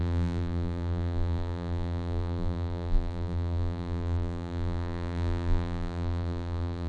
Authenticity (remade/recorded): remade